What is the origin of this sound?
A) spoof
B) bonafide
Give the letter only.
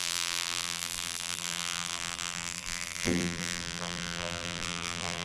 A